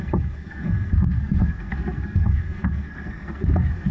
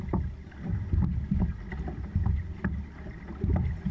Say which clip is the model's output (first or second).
first